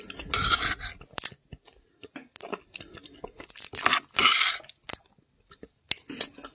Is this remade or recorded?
recorded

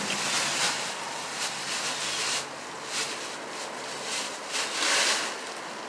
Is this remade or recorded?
recorded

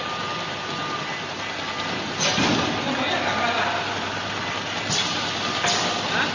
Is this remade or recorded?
recorded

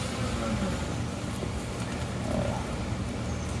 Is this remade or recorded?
recorded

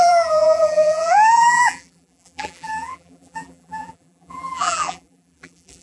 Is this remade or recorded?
remade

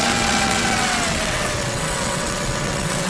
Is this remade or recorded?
remade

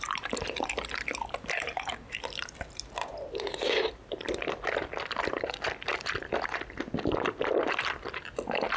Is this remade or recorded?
remade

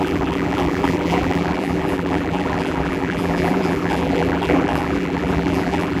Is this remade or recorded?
remade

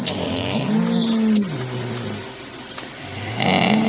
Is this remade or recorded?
recorded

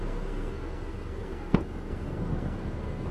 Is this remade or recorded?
remade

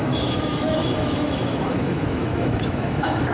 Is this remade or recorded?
remade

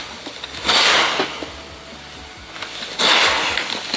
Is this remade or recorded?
recorded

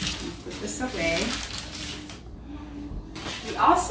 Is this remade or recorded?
recorded